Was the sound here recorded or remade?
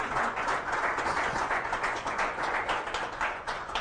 remade